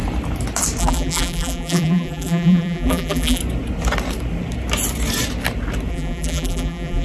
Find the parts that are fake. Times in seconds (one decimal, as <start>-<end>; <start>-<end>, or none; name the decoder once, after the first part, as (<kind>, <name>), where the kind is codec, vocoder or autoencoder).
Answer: 0.8-3.4 (vocoder, BigVGAN v2); 5.9-7.0

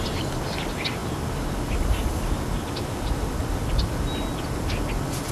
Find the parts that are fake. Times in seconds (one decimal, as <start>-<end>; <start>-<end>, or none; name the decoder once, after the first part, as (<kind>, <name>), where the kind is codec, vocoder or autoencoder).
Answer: none